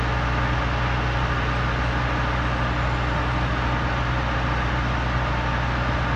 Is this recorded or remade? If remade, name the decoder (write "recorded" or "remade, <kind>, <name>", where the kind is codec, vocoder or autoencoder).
recorded